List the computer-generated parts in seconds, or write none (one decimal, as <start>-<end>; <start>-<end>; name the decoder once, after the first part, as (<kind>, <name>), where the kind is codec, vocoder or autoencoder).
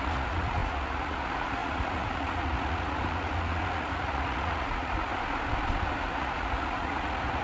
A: 0.0-5.1 (vocoder, Vocos); 5.8-7.4